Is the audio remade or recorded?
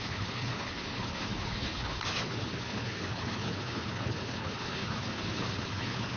remade